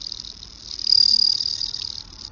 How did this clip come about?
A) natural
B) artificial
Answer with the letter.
A